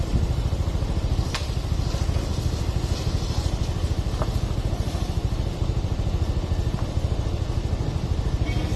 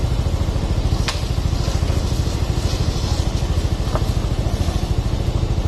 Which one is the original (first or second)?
second